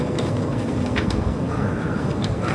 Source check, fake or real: fake